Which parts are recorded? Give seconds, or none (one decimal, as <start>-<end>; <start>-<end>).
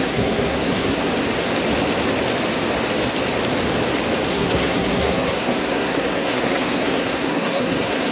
1.1-4.3